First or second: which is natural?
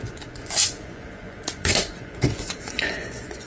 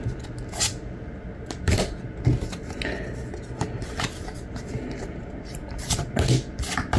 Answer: second